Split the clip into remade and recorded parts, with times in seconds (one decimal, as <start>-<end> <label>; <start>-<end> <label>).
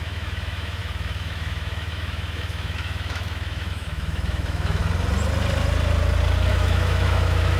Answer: 0.0-4.8 remade; 4.8-6.5 recorded; 6.5-7.6 remade